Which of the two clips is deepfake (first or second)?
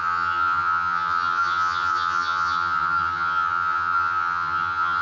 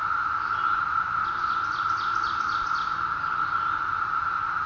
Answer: first